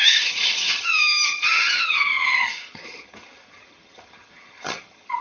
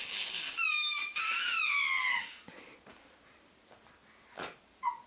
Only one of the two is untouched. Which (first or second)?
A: second